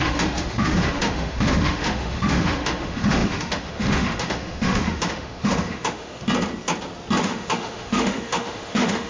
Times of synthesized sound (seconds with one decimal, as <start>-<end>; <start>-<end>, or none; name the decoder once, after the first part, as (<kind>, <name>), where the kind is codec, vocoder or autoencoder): 0.0-6.2 (autoencoder, DAC-VAE); 7.2-9.1